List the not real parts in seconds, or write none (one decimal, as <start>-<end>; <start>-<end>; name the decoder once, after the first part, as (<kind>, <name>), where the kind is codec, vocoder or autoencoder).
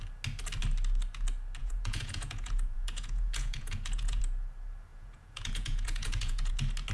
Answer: 1.6-4.2 (vocoder, Vocos); 4.9-6.5